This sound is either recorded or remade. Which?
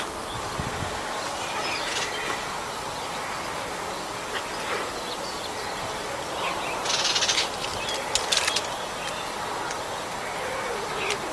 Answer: recorded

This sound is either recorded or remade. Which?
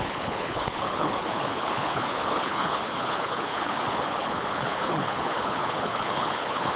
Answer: remade